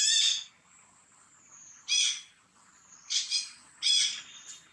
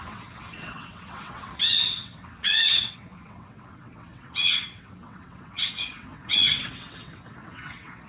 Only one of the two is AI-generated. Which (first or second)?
second